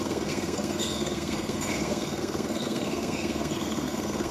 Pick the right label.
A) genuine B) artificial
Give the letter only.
B